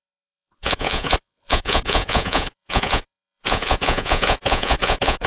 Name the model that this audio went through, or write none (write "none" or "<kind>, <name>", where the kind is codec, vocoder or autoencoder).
vocoder, Vocos